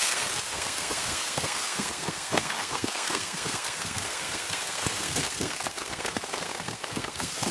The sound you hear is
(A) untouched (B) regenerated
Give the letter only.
B